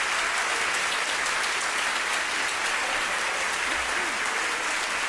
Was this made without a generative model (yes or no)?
yes